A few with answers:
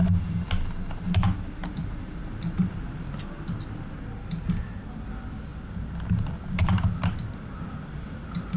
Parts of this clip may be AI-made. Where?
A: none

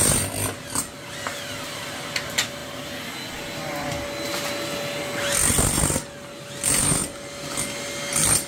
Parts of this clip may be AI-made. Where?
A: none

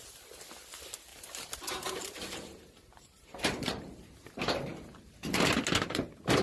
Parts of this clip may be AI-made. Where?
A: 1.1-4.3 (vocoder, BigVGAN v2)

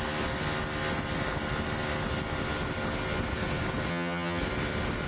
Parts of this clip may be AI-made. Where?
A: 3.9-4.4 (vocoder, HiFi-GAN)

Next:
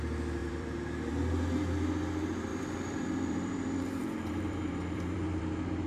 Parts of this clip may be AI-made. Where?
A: 0.4-1.1 (vocoder, BigVGAN v2); 2.5-5.4